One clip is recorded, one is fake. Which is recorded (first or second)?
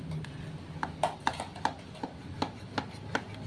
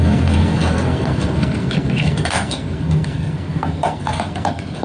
first